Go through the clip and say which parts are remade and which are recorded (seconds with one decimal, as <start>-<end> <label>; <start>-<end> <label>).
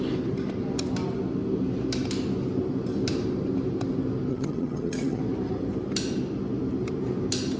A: 0.0-4.3 recorded; 4.3-5.2 remade; 5.2-7.6 recorded